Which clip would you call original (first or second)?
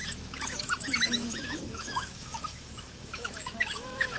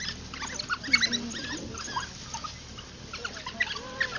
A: second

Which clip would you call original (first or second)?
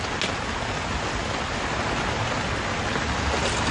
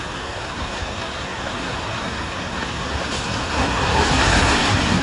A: first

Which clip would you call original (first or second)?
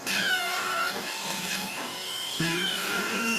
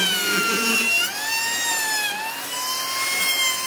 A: second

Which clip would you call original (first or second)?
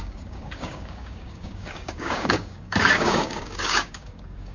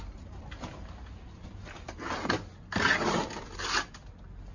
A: second